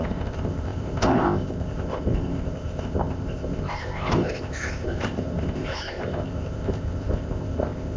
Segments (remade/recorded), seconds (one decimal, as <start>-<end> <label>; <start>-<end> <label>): 0.0-8.0 remade